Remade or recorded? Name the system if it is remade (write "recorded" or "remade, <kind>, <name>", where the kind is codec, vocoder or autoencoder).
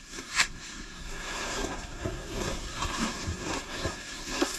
remade, codec, SNAC